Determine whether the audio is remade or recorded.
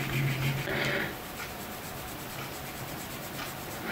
remade